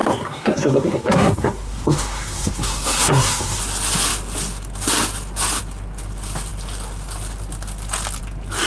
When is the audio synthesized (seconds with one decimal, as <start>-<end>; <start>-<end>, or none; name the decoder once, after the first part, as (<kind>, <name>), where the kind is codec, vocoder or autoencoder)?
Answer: 0.0-3.6 (codec, SNAC)